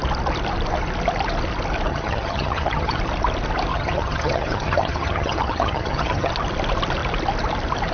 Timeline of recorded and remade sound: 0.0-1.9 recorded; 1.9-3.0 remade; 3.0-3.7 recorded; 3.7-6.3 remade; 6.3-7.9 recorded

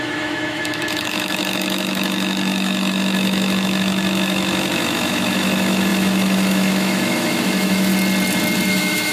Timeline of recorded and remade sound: 0.0-7.9 remade; 7.9-8.7 recorded; 8.7-9.1 remade

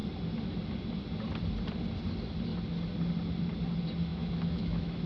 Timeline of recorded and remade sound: 0.0-4.1 recorded; 4.1-5.1 remade

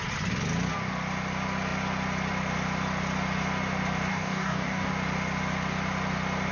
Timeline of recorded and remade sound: 0.0-4.1 recorded; 4.1-4.9 remade; 4.9-6.5 recorded

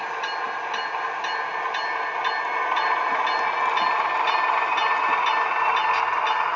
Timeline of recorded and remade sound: 0.0-6.6 recorded

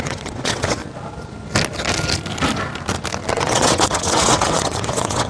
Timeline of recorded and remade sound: 0.0-0.8 remade; 0.8-3.3 recorded; 3.3-5.3 remade